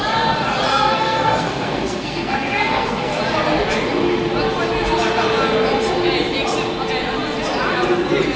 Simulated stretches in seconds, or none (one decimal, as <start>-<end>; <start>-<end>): 0.7-3.2